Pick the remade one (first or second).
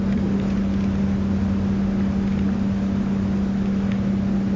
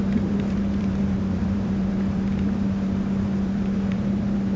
second